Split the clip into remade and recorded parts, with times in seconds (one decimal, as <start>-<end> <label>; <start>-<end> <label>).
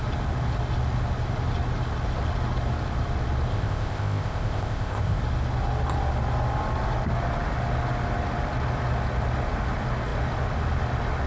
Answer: 0.0-3.5 recorded; 3.5-5.2 remade; 5.2-11.3 recorded